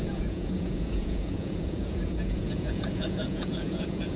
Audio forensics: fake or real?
fake